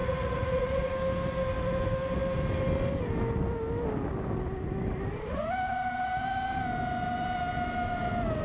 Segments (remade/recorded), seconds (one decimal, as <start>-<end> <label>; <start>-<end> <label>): 0.0-0.9 remade; 0.9-8.4 recorded